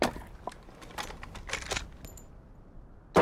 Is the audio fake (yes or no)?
no